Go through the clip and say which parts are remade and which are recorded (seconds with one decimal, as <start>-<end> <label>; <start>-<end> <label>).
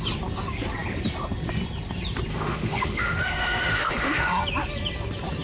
0.0-2.3 recorded; 2.3-4.3 remade; 4.3-5.4 recorded